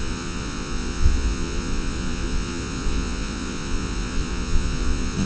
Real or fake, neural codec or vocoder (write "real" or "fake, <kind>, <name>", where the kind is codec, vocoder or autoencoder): fake, vocoder, Vocos